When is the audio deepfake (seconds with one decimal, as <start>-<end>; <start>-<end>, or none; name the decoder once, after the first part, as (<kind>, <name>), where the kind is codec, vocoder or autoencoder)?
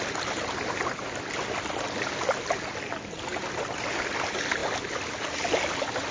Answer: none